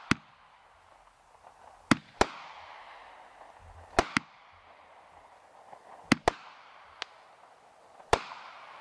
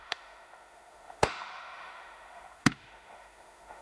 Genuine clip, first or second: first